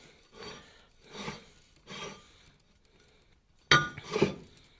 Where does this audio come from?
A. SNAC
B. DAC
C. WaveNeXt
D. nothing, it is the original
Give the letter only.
D